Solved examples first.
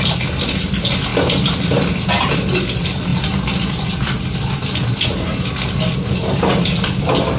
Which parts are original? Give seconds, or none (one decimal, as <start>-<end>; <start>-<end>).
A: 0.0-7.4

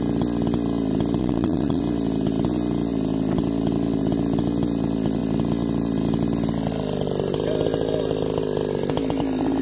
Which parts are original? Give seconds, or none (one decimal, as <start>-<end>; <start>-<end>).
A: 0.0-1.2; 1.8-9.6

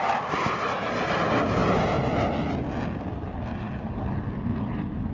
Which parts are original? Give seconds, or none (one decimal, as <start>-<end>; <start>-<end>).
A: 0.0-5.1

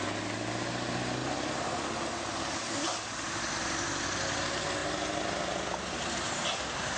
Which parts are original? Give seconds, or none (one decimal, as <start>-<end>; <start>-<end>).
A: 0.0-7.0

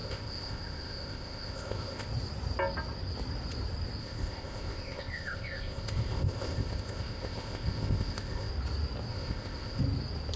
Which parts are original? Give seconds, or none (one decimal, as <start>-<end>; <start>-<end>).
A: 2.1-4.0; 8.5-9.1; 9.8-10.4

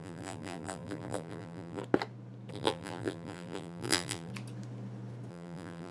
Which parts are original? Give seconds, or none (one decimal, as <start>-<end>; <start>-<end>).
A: 1.8-2.5; 4.3-5.3

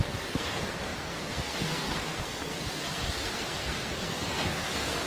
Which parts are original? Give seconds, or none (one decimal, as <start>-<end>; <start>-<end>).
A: none

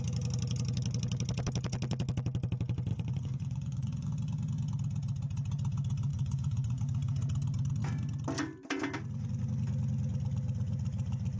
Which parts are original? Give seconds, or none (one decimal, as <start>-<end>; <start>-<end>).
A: 0.0-2.9; 4.1-6.1; 6.8-11.4